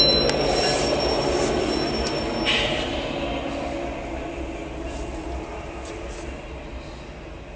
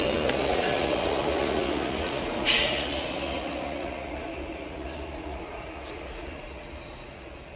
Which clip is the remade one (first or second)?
second